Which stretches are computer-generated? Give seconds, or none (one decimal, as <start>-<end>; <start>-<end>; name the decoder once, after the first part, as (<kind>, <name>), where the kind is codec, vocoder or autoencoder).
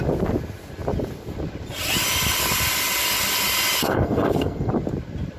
3.8-4.7 (codec, SNAC)